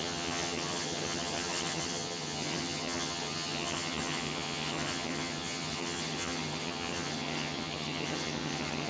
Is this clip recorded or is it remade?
remade